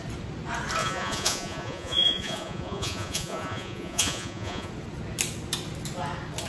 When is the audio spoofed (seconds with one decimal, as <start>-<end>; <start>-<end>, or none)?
0.8-4.7